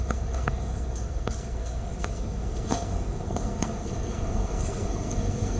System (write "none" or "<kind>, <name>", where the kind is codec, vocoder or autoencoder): codec, SNAC